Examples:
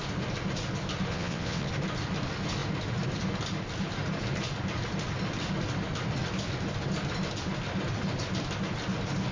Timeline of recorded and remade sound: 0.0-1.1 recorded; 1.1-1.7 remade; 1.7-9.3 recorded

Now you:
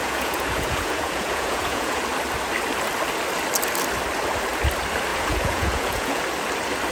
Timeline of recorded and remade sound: 0.0-2.0 remade; 2.0-5.1 recorded; 5.1-6.2 remade; 6.2-6.9 recorded

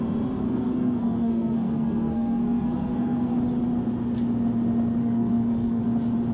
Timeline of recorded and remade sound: 0.0-0.4 recorded; 0.4-3.3 remade; 3.3-5.0 recorded; 5.0-5.8 remade; 5.8-6.3 recorded

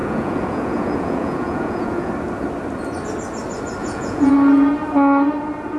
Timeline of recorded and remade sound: 0.0-2.1 remade; 2.1-3.8 recorded; 3.8-4.3 remade; 4.3-5.8 recorded

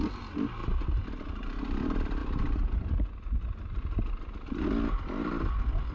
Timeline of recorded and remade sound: 0.0-5.9 recorded

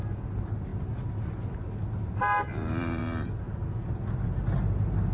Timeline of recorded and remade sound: 0.0-5.1 recorded

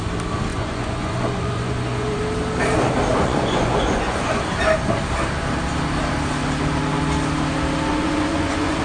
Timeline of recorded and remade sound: 0.0-0.5 recorded; 0.5-2.2 remade; 2.2-3.1 recorded; 3.1-4.4 remade; 4.4-7.9 recorded; 7.9-8.8 remade